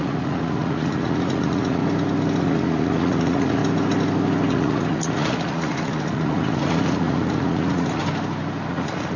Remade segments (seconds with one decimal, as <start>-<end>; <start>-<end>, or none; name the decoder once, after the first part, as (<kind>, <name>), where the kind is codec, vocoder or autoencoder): 0.0-1.8 (vocoder, Vocos); 2.4-3.6; 4.5-8.0; 8.7-9.2